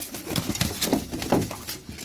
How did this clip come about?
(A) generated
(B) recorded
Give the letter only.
B